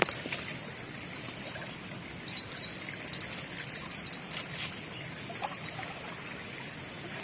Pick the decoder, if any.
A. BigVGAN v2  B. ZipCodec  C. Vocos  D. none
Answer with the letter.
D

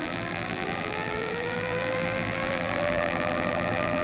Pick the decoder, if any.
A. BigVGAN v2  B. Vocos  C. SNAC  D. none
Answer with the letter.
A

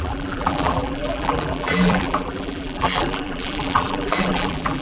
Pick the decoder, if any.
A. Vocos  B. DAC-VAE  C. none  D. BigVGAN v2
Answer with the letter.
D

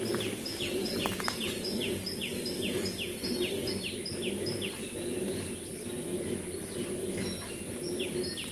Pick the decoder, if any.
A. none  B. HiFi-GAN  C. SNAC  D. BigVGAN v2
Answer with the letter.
A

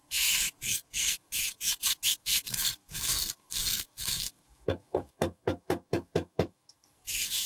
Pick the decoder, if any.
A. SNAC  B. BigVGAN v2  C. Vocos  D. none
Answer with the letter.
A